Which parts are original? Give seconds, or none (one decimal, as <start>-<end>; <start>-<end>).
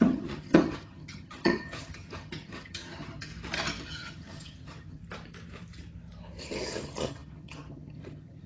3.3-3.8; 5.0-6.4